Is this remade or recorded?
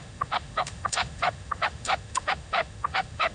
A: remade